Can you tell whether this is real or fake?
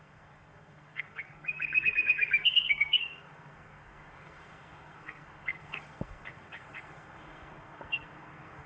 fake